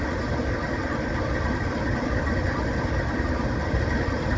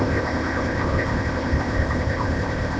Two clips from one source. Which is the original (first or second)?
first